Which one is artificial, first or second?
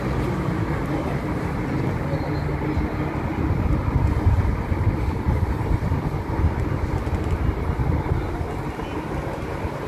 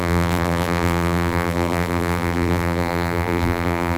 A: second